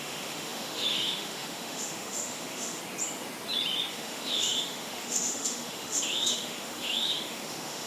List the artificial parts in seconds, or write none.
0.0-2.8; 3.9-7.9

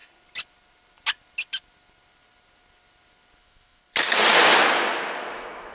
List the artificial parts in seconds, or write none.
3.4-3.8; 5.3-5.7

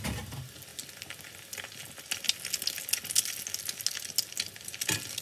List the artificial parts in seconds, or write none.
none

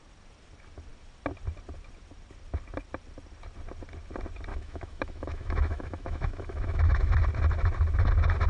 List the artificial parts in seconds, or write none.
4.5-7.1